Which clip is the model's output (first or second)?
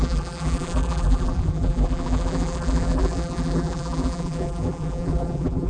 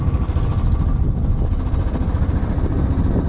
first